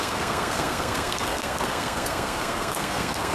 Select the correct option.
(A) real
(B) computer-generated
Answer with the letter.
B